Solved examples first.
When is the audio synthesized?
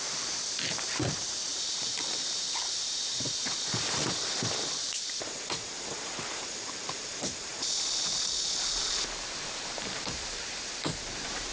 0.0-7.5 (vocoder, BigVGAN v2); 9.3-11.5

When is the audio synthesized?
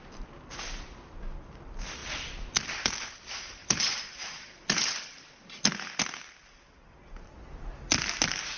3.6-5.6 (vocoder, BigVGAN v2)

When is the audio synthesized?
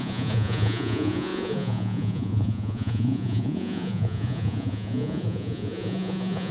0.0-6.5 (vocoder, Vocos)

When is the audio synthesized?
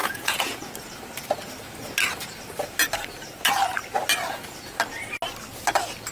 0.0-0.7 (vocoder, Vocos)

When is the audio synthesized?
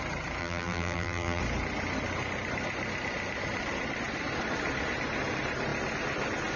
0.4-1.4 (vocoder, BigVGAN v2)